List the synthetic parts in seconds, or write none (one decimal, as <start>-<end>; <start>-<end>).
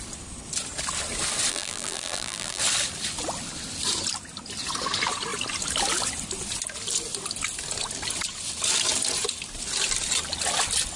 1.5-2.6